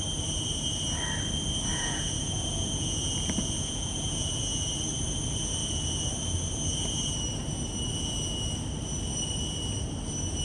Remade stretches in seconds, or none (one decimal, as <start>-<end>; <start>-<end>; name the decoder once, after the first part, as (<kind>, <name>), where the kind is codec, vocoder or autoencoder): 1.7-4.3 (vocoder, Vocos)